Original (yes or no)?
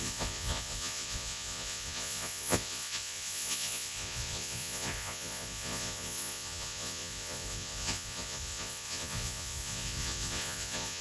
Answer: no